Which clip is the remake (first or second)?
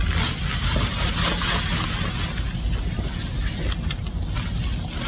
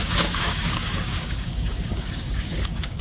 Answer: second